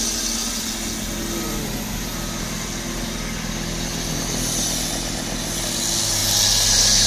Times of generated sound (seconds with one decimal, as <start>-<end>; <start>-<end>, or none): none